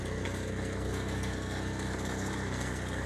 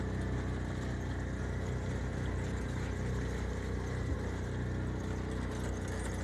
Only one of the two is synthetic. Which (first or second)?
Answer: first